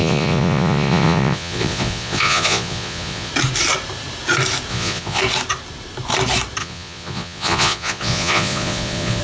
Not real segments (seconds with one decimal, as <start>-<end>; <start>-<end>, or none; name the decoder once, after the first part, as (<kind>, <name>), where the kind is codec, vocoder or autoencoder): 0.0-3.3 (vocoder, Vocos); 4.7-5.2; 6.6-9.2